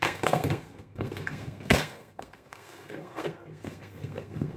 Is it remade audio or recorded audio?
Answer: remade